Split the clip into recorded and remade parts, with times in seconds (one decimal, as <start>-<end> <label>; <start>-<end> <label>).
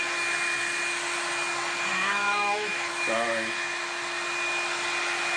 0.0-1.9 recorded; 1.9-2.9 remade; 2.9-5.4 recorded